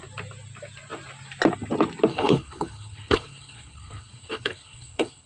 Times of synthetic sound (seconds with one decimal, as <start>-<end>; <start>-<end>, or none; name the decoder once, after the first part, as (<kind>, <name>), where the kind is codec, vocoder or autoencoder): 2.1-5.3 (codec, HILCodec)